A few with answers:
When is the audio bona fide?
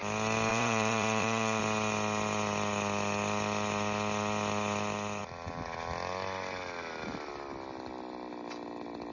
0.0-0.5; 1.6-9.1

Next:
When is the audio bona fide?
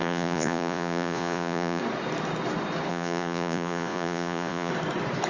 1.8-2.9; 4.7-5.3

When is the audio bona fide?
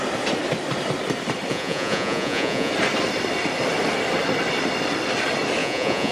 0.0-1.5; 2.7-5.6